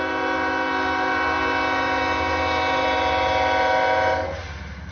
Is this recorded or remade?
recorded